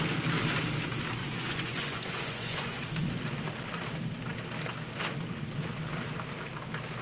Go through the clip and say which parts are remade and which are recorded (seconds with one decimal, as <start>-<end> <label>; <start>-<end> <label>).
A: 0.0-1.2 recorded; 1.2-2.8 remade; 2.8-7.0 recorded